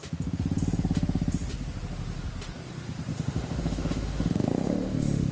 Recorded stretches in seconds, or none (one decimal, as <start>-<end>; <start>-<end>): 0.0-3.1